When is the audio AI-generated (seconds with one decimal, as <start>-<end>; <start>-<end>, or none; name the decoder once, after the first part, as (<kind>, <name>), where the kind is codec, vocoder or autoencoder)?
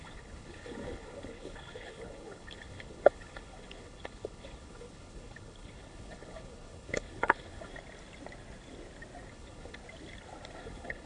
0.0-7.7 (codec, HILCodec); 9.3-9.8; 10.6-11.1